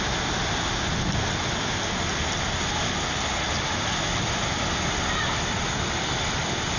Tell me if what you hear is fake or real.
real